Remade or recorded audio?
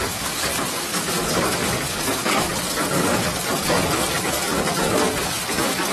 remade